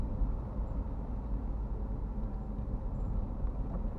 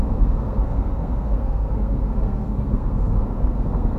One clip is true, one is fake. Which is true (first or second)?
first